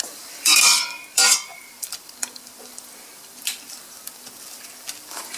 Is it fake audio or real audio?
fake